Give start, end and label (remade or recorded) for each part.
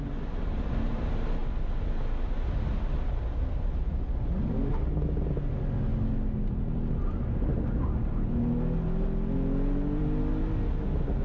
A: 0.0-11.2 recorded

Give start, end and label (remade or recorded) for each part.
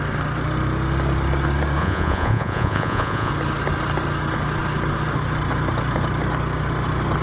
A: 0.0-1.8 recorded; 1.8-3.3 remade; 3.3-7.2 recorded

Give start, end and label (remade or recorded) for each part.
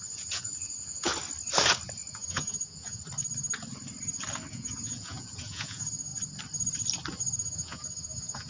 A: 0.0-1.1 remade; 1.1-2.1 recorded; 2.1-3.0 remade; 3.0-4.5 recorded; 4.5-6.1 remade; 6.1-7.2 recorded; 7.2-8.5 remade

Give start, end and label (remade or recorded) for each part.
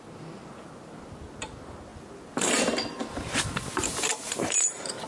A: 0.0-5.1 recorded